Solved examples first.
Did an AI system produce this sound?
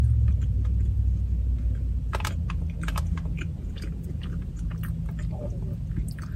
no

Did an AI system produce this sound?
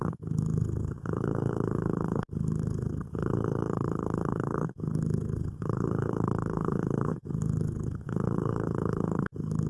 yes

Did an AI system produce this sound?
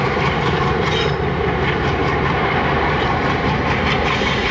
yes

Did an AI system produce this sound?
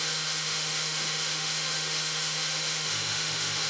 yes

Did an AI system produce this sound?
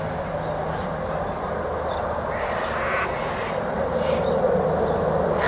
no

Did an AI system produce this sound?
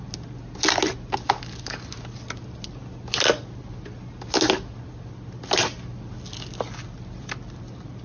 no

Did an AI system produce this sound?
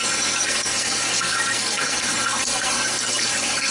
yes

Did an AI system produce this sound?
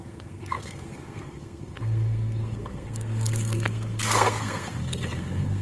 yes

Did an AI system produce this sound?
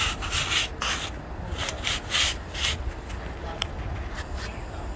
no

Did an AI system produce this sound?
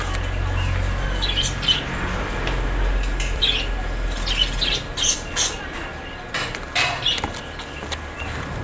no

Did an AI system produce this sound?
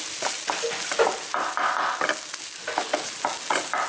no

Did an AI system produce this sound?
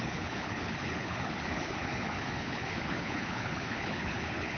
yes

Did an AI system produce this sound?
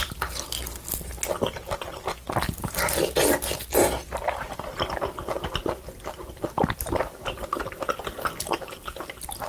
no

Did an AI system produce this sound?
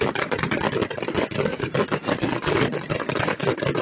no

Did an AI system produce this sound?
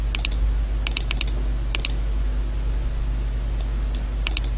no